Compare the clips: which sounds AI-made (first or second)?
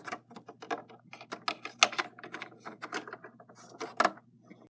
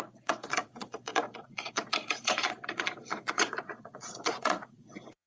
second